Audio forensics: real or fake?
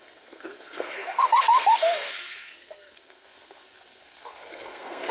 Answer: fake